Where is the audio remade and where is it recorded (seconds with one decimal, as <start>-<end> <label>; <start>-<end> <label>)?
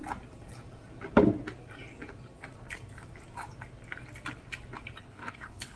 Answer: 0.0-5.0 recorded; 5.0-5.8 remade